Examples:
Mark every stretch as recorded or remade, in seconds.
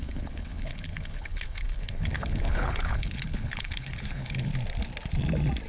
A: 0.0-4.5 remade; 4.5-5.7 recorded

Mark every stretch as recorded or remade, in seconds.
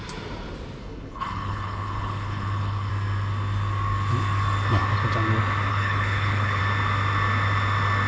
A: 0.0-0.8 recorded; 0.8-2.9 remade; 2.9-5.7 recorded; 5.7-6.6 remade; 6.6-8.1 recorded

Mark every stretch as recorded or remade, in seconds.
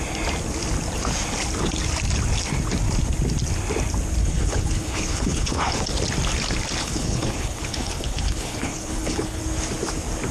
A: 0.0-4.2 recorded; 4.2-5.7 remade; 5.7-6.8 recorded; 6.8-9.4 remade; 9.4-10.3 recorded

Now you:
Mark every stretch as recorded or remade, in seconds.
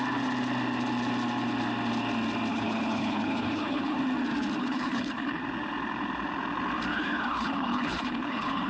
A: 0.0-2.5 recorded; 2.5-4.0 remade; 4.0-4.6 recorded; 4.6-5.4 remade; 5.4-6.9 recorded; 6.9-8.7 remade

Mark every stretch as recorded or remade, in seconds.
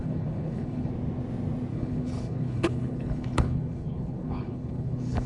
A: 0.0-0.9 remade; 0.9-1.7 recorded; 1.7-5.3 remade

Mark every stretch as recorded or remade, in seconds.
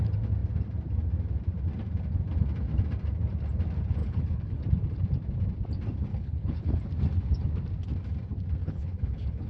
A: 0.0-4.0 recorded; 4.0-4.6 remade; 4.6-6.1 recorded; 6.1-6.8 remade; 6.8-8.6 recorded; 8.6-9.5 remade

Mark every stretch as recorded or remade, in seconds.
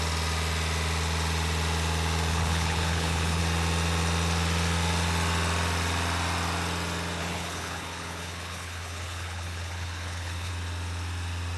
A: 0.0-2.3 recorded; 2.3-3.4 remade; 3.4-7.2 recorded; 7.2-10.5 remade; 10.5-11.6 recorded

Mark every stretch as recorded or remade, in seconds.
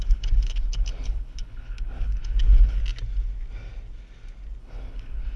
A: 0.0-2.8 remade; 2.8-4.6 recorded; 4.6-5.4 remade